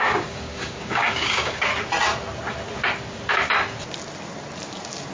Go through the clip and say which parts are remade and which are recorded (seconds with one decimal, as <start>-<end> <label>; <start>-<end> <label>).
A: 0.0-1.7 remade; 1.7-5.1 recorded